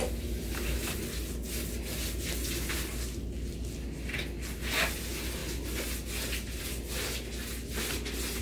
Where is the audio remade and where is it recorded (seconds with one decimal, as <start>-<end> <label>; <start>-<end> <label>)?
0.0-8.4 recorded